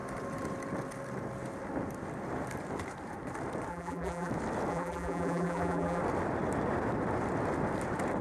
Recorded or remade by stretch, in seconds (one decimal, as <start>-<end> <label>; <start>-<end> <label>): 0.0-3.7 recorded; 3.7-4.3 remade; 4.3-4.7 recorded; 4.7-6.0 remade; 6.0-8.2 recorded